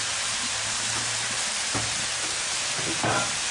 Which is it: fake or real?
real